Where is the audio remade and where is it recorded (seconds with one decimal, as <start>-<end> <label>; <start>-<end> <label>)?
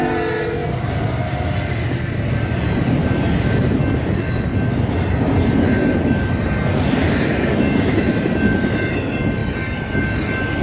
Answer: 0.0-3.0 recorded; 3.0-3.8 remade; 3.8-6.7 recorded; 6.7-7.4 remade; 7.4-10.6 recorded